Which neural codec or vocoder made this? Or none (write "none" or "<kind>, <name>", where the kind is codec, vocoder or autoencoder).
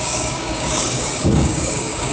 codec, DAC